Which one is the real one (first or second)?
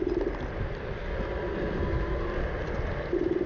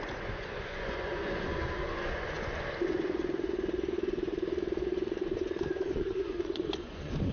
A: first